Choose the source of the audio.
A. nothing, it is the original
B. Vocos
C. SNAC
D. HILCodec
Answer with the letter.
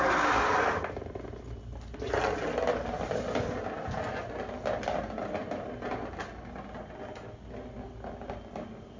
A